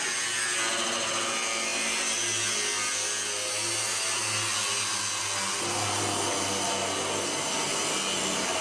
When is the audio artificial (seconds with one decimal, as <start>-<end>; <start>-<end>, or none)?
none